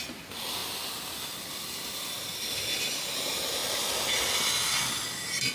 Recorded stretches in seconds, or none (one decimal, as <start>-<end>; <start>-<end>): 0.0-5.5